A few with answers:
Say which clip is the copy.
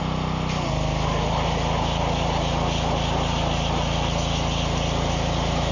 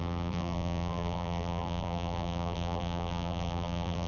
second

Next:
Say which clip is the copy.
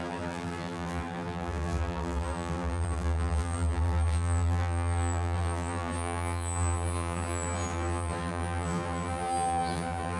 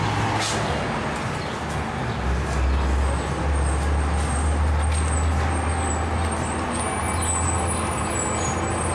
first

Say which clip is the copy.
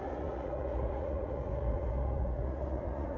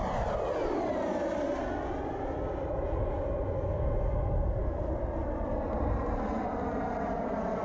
first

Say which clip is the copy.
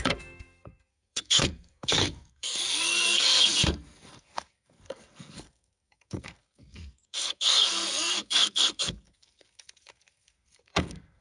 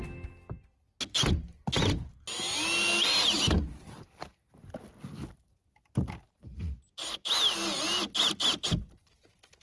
first